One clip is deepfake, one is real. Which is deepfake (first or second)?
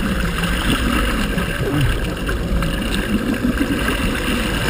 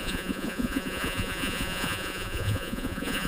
second